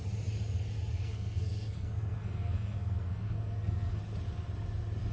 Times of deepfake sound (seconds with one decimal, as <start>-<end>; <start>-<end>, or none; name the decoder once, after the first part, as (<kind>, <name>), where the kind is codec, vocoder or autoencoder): 0.9-4.0 (codec, SNAC)